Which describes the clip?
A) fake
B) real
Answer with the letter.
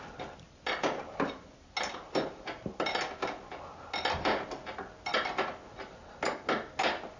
B